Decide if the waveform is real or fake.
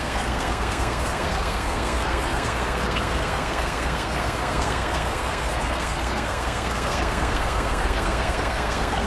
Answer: fake